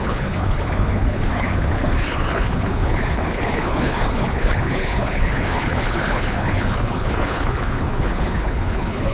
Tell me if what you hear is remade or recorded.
remade